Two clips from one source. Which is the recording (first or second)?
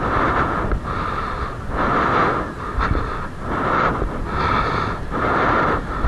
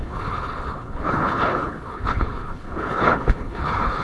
first